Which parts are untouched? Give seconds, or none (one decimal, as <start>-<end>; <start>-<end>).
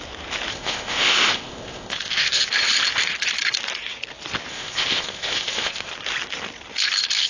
0.0-0.5; 2.5-4.5; 5.9-7.3